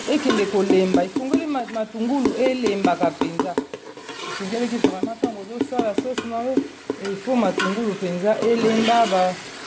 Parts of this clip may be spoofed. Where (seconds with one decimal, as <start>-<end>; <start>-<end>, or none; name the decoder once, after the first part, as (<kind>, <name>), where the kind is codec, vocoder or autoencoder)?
none

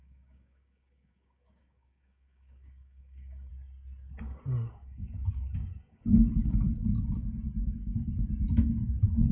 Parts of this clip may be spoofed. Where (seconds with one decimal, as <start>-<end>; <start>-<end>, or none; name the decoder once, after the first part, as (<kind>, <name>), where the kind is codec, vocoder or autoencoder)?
0.0-3.5 (codec, DAC); 4.2-9.3

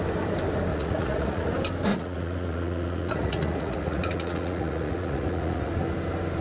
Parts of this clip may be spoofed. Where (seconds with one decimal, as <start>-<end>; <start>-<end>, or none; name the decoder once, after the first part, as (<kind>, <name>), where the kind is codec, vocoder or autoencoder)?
0.7-1.5 (vocoder, Vocos); 1.9-5.7